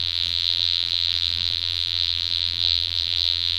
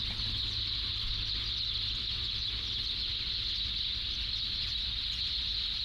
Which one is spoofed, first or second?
first